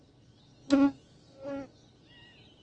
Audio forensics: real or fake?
real